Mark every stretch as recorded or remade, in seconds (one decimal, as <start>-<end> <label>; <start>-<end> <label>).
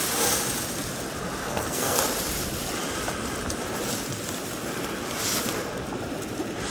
0.0-1.4 recorded; 1.4-2.0 remade; 2.0-6.7 recorded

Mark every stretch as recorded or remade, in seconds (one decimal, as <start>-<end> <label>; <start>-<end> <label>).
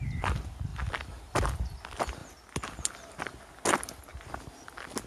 0.0-5.1 recorded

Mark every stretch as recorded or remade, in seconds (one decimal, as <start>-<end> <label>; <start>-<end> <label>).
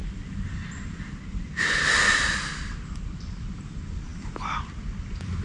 0.0-3.2 recorded; 3.2-5.4 remade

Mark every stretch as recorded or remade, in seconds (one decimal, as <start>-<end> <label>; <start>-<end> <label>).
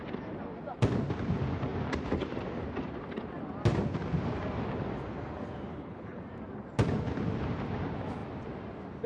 0.0-5.7 recorded; 5.7-6.2 remade; 6.2-9.1 recorded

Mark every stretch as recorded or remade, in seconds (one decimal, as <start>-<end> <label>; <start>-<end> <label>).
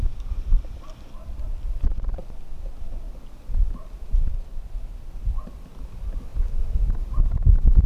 0.0-7.9 recorded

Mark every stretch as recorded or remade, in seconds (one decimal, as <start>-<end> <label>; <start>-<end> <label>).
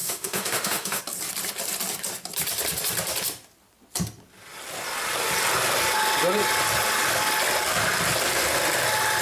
0.0-1.0 remade; 1.0-9.2 recorded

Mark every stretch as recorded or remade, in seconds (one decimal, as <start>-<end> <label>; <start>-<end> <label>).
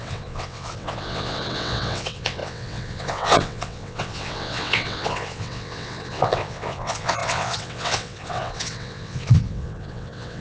0.0-10.4 remade